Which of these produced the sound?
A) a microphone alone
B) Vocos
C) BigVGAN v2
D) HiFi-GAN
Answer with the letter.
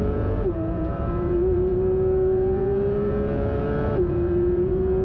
B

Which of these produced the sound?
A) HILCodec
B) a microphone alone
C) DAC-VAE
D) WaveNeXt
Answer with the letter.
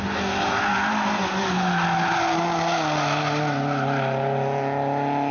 B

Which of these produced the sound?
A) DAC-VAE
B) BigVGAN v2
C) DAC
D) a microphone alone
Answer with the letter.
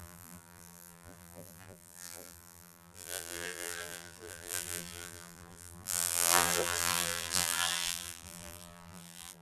B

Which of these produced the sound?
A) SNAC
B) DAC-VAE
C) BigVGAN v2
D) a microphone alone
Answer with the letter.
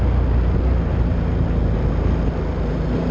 D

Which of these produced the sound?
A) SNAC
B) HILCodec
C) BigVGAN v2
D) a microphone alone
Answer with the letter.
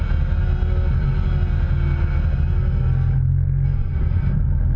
D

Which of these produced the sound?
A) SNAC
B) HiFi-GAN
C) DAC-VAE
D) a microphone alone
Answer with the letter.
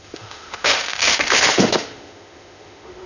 C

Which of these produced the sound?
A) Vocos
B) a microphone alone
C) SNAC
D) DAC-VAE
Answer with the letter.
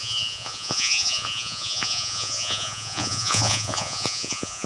A